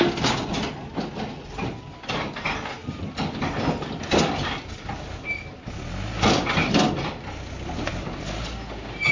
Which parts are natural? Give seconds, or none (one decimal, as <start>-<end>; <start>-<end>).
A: 0.0-9.1